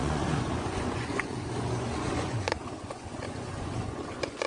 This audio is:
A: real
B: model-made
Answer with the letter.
B